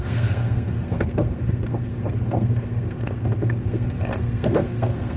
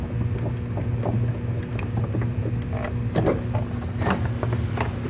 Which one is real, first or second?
second